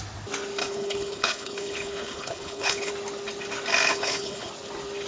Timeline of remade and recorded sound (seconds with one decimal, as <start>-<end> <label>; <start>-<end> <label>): 0.0-0.6 recorded; 0.6-2.9 remade; 2.9-3.9 recorded; 3.9-4.5 remade; 4.5-5.1 recorded